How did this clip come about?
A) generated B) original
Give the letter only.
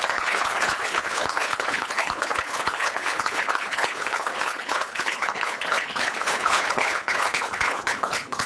A